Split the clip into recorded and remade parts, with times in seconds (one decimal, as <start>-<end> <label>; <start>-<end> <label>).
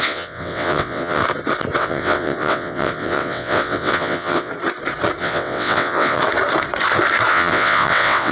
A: 0.0-1.2 remade; 1.2-1.8 recorded; 1.8-4.5 remade; 4.5-5.2 recorded; 5.2-6.2 remade; 6.2-7.3 recorded; 7.3-8.3 remade